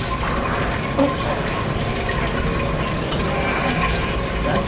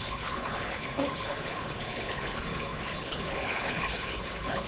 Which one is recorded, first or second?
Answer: first